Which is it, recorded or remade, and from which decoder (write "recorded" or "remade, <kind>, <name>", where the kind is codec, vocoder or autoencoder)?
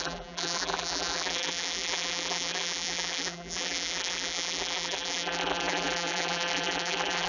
remade, vocoder, BigVGAN v2